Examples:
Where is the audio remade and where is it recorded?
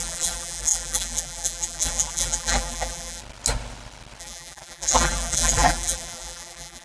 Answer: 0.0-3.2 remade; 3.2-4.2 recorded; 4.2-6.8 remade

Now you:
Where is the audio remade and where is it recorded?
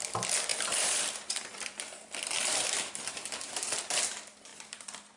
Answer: 0.0-0.5 recorded; 0.5-2.9 remade; 2.9-4.5 recorded; 4.5-5.2 remade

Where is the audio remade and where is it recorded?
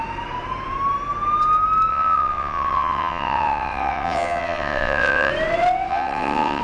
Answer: 0.0-1.9 recorded; 1.9-5.3 remade; 5.3-5.9 recorded; 5.9-6.6 remade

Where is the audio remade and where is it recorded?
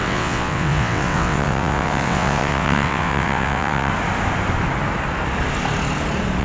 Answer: 0.0-3.9 remade; 3.9-6.4 recorded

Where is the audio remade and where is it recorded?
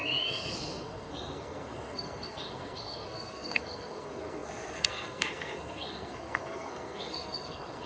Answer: 0.0-7.9 remade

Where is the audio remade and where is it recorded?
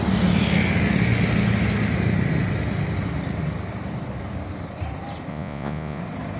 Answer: 0.0-5.3 recorded; 5.3-6.0 remade; 6.0-6.4 recorded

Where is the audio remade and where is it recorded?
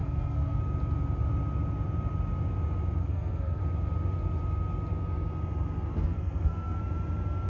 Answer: 0.0-0.6 remade; 0.6-3.0 recorded; 3.0-3.6 remade; 3.6-5.9 recorded; 5.9-6.8 remade; 6.8-7.5 recorded